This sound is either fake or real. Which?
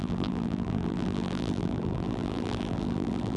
fake